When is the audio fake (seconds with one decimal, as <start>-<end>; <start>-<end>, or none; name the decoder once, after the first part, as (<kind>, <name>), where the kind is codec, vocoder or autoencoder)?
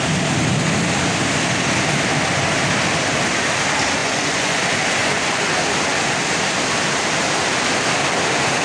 4.0-4.6 (vocoder, Vocos); 5.0-5.5